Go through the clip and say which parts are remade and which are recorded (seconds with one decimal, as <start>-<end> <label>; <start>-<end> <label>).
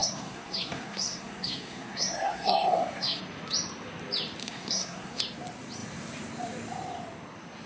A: 0.0-3.2 remade; 3.2-4.4 recorded; 4.4-5.2 remade; 5.2-7.7 recorded